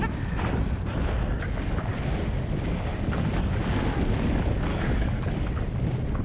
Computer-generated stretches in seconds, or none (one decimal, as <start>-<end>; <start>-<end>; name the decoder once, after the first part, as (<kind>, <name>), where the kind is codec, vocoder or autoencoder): 4.7-5.3 (codec, DAC)